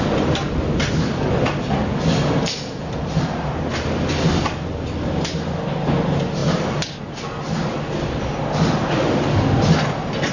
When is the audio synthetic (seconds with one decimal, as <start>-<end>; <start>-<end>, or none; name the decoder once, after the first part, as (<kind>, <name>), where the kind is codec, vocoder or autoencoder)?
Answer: none